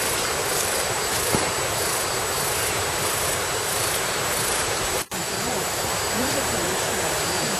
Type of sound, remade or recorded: remade